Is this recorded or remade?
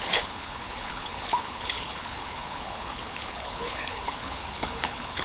remade